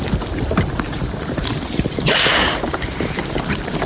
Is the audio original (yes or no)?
yes